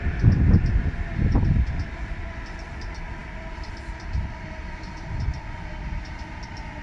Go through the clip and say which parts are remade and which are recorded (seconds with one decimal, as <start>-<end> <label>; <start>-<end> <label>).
0.0-6.8 recorded